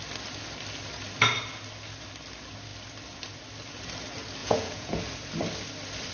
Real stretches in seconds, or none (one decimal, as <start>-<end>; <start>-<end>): 0.0-4.4; 5.0-6.1